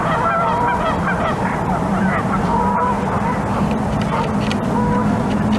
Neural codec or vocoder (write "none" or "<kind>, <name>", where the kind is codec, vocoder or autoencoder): vocoder, BigVGAN v2